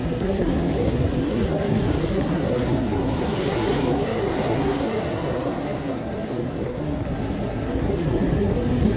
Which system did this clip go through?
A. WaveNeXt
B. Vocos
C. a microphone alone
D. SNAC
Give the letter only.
D